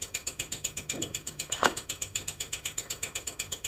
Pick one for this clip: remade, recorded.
remade